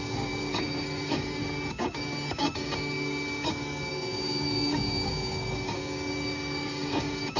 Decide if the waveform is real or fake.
fake